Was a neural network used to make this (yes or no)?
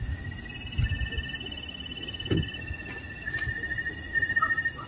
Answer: no